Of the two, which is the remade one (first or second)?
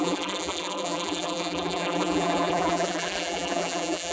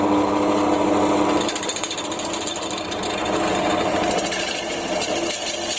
first